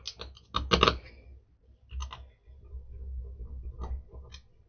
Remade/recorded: recorded